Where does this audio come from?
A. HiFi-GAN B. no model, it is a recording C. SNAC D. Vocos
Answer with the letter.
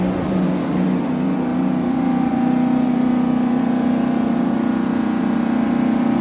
D